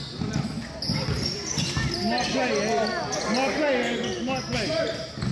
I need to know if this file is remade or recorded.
recorded